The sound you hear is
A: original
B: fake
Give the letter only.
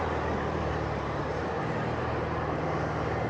B